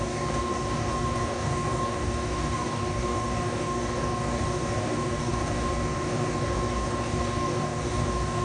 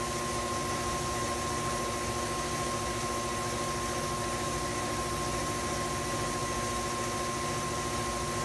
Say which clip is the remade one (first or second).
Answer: first